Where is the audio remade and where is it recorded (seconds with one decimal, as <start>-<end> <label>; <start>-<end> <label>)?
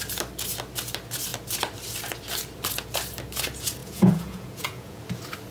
0.0-3.8 recorded; 3.8-5.0 remade; 5.0-5.5 recorded